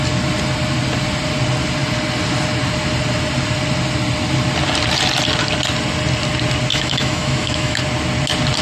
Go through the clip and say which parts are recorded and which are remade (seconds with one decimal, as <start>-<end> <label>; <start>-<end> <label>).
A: 0.0-6.7 recorded; 6.7-7.8 remade; 7.8-8.6 recorded